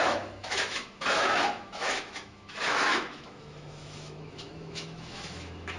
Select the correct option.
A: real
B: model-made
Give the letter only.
B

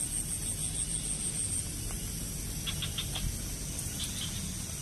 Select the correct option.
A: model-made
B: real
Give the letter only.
B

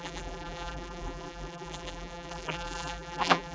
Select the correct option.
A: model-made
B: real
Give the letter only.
A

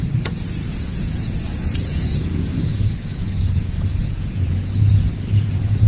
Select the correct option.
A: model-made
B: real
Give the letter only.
A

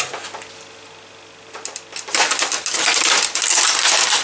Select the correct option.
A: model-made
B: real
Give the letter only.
B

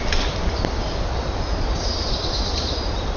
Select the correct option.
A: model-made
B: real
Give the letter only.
B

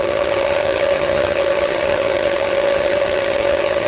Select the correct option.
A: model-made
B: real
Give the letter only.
A